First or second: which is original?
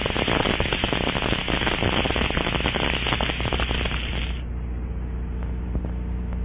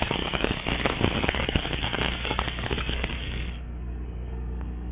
first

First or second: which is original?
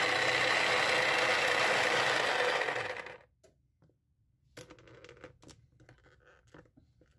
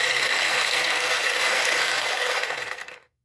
first